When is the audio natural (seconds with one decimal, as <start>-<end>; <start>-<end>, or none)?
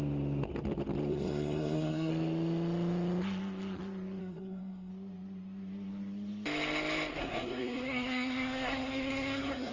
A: 0.0-1.1; 2.1-4.2; 4.9-7.2